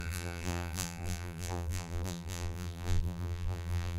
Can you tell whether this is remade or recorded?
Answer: remade